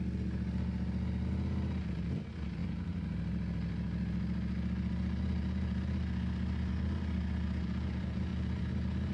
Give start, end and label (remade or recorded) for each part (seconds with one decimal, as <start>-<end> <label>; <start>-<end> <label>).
0.0-8.3 recorded; 8.3-9.1 remade

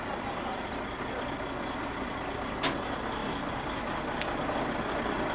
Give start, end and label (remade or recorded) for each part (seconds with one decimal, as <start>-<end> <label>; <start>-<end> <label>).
0.0-5.3 recorded

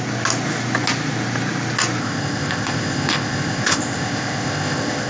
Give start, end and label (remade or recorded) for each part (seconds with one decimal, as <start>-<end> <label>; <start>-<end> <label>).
0.0-2.0 recorded; 2.0-5.1 remade

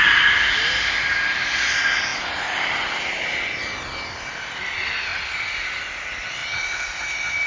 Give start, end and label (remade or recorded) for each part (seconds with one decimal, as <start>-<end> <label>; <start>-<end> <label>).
0.0-7.5 recorded

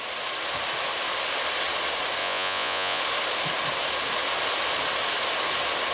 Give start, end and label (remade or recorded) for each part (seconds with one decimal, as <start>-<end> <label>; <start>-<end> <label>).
0.0-2.2 recorded; 2.2-3.0 remade; 3.0-5.9 recorded

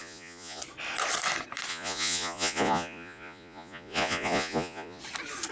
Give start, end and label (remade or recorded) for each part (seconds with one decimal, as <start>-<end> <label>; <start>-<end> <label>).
0.0-0.6 remade; 0.6-1.7 recorded; 1.7-5.0 remade; 5.0-5.5 recorded

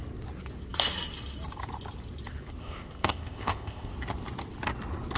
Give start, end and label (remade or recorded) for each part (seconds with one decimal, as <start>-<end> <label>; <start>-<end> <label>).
0.0-2.6 recorded; 2.6-3.9 remade; 3.9-5.2 recorded

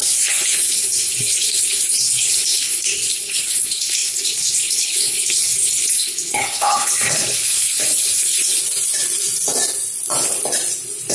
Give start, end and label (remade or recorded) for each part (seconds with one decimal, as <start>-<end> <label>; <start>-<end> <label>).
0.0-8.6 remade; 8.6-11.1 recorded